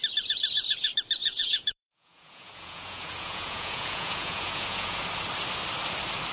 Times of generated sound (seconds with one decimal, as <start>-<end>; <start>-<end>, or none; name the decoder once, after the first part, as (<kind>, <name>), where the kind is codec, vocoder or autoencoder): 1.2-5.0 (vocoder, Vocos)